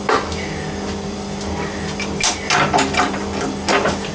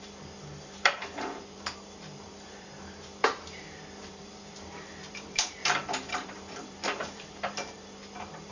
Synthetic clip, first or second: second